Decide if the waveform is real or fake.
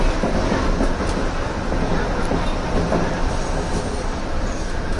real